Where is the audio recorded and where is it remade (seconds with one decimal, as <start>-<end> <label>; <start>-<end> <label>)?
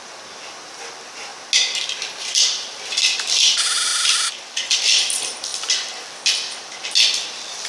0.0-7.7 recorded